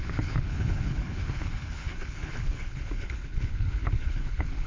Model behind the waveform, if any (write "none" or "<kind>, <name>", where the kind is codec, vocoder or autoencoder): codec, HILCodec